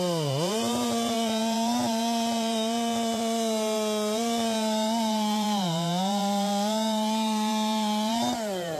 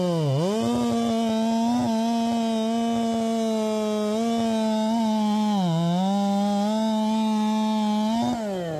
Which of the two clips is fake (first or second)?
first